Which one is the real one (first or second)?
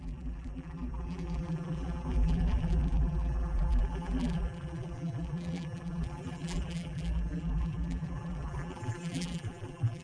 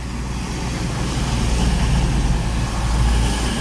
second